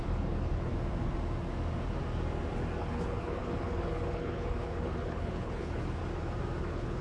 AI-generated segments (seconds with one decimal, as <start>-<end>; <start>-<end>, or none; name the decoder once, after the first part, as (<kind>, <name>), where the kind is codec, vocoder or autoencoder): 0.0-0.7 (codec, HILCodec); 2.8-6.0; 6.6-7.0